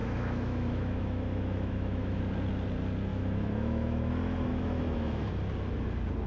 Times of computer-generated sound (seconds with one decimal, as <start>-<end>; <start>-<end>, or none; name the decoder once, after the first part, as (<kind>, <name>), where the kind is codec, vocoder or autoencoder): 0.0-2.2 (autoencoder, DAC-VAE); 3.1-4.1; 4.5-5.3